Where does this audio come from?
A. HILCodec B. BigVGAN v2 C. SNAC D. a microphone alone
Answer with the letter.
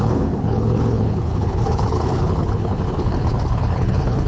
A